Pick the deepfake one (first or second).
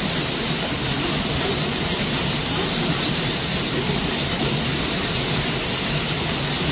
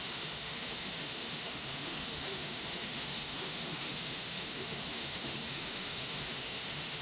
second